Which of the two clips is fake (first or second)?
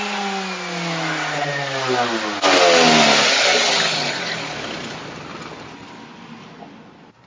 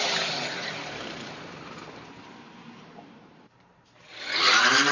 second